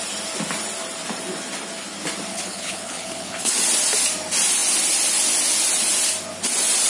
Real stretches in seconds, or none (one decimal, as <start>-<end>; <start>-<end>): 0.0-2.3; 3.5-6.9